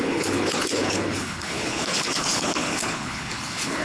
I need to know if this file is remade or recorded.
remade